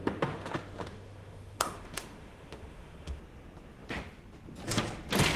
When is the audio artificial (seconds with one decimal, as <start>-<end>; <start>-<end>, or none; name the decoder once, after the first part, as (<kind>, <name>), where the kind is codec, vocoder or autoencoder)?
0.0-3.2 (autoencoder, DAC-VAE)